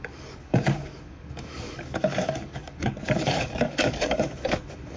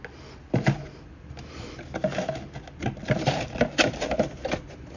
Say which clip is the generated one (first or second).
first